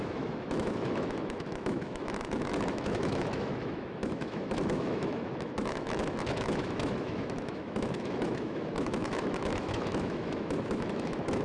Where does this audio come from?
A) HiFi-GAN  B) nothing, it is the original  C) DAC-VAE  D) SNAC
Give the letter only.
C